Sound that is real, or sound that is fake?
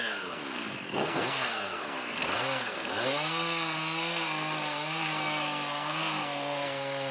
fake